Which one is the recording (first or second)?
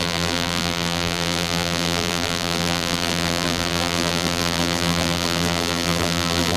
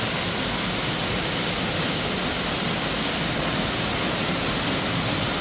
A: second